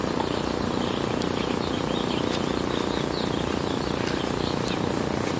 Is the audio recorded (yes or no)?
yes